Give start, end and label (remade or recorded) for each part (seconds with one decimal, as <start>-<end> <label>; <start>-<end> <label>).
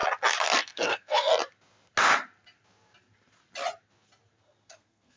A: 0.0-0.6 recorded; 0.6-1.3 remade; 1.3-4.4 recorded; 4.4-5.2 remade